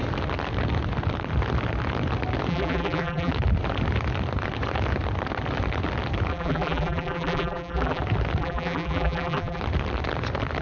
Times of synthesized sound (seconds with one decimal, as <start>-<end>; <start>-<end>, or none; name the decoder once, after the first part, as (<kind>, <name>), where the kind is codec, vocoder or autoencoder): 2.5-3.3 (vocoder, BigVGAN v2); 6.3-8.0; 8.4-9.6